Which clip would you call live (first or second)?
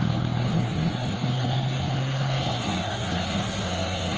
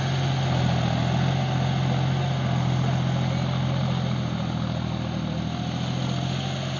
second